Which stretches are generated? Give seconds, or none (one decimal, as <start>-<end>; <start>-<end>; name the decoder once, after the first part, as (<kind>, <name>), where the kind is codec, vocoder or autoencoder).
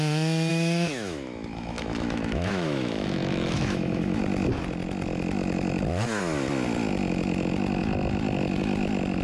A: 0.5-4.2 (autoencoder, DAC-VAE)